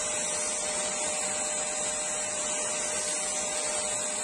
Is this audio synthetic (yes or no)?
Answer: no